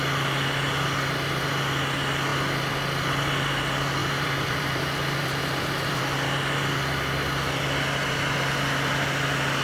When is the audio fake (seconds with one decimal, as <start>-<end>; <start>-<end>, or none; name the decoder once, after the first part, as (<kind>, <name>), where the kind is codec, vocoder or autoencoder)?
4.0-6.0 (vocoder, BigVGAN v2)

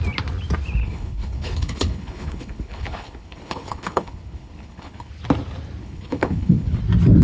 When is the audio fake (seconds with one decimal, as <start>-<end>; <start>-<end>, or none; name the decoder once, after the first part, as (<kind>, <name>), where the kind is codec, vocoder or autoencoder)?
0.8-5.1 (codec, HILCodec); 5.8-6.8